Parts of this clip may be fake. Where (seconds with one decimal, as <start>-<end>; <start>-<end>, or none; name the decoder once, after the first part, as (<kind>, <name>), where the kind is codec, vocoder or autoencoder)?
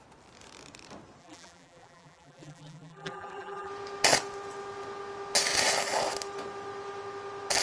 1.2-3.7 (vocoder, BigVGAN v2)